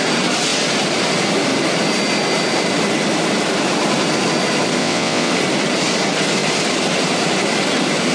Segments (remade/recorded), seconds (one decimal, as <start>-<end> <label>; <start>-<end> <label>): 0.0-4.8 recorded; 4.8-5.3 remade; 5.3-8.1 recorded

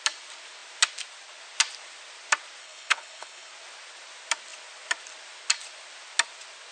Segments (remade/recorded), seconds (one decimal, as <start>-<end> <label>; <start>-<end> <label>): 0.0-2.6 recorded; 2.6-3.5 remade; 3.5-6.7 recorded

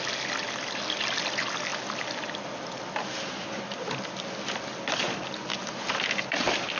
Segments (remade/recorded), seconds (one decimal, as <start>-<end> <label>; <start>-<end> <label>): 0.0-6.8 recorded

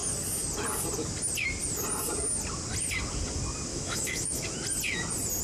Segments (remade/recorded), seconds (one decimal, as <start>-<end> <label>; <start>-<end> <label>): 0.0-3.7 recorded; 3.7-4.5 remade; 4.5-5.4 recorded

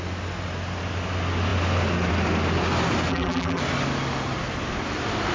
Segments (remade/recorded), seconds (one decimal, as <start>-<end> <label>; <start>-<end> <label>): 0.0-3.1 recorded; 3.1-3.6 remade; 3.6-5.3 recorded